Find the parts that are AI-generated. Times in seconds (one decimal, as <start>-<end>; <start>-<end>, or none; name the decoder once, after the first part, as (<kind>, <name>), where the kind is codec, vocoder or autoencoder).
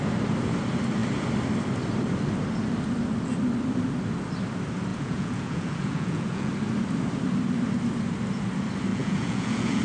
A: 4.9-6.5 (vocoder, Vocos); 8.9-9.8